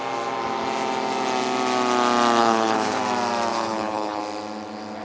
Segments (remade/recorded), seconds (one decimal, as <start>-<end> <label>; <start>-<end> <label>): 0.0-2.4 recorded; 2.4-3.0 remade; 3.0-3.5 recorded; 3.5-4.2 remade; 4.2-5.0 recorded